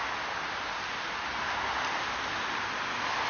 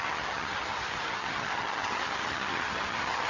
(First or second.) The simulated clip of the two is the second